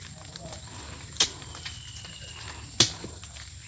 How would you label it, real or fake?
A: real